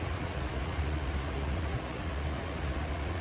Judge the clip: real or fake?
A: fake